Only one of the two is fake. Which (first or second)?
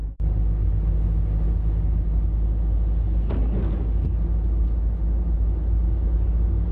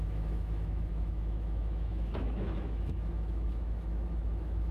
second